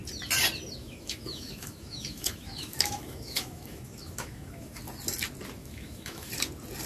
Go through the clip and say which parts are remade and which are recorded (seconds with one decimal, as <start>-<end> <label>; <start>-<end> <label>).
0.0-0.8 recorded; 0.8-4.8 remade; 4.8-5.6 recorded; 5.6-6.3 remade; 6.3-6.9 recorded